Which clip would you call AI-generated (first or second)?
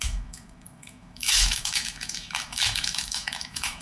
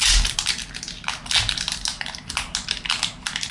first